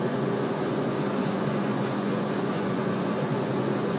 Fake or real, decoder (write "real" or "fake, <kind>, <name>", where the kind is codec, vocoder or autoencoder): fake, vocoder, Vocos